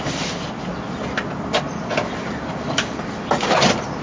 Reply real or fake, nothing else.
real